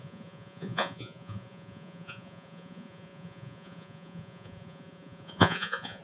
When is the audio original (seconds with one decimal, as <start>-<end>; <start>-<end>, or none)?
none